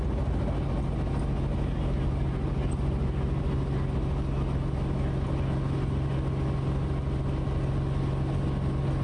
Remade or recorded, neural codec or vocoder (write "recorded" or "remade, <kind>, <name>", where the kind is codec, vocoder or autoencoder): recorded